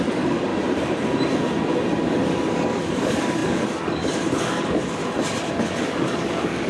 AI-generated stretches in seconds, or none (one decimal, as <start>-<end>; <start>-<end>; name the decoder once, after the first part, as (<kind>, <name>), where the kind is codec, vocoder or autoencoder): 0.0-0.5 (codec, DAC); 2.0-5.0; 5.5-6.7